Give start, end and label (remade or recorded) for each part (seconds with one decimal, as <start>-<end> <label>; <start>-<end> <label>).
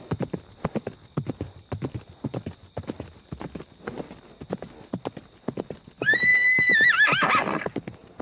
0.0-8.2 recorded